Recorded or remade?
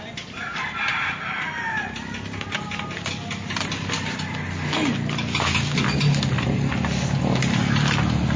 recorded